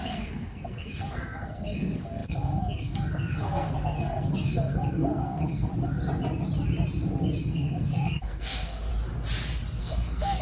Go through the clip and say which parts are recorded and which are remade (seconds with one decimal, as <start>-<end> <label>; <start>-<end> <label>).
0.0-5.7 remade; 5.7-7.4 recorded; 7.4-8.9 remade; 8.9-9.8 recorded; 9.8-10.4 remade